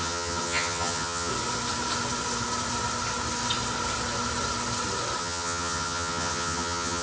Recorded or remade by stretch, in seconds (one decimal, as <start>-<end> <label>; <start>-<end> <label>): 0.0-1.3 remade; 1.3-5.2 recorded; 5.2-7.0 remade